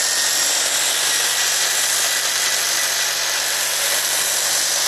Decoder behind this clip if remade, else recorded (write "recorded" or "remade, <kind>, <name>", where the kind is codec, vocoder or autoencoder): recorded